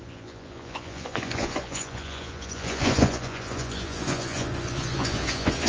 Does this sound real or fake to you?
fake